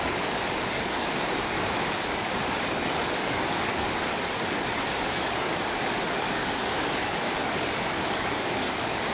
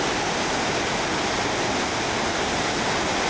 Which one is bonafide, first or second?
second